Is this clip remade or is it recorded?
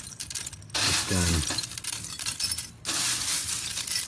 recorded